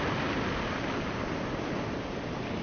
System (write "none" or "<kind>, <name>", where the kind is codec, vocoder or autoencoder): none